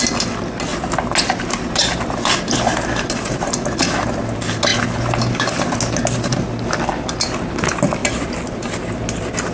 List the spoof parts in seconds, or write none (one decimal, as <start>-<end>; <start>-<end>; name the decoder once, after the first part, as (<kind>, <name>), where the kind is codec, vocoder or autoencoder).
none